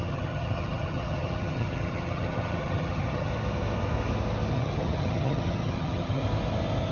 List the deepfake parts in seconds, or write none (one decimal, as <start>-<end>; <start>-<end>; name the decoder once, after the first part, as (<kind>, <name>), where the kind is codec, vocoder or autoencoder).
0.0-3.3 (vocoder, HiFi-GAN); 4.5-6.2